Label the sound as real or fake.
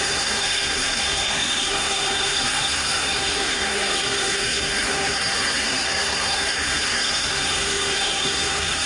fake